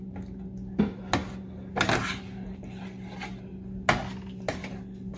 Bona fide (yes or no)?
yes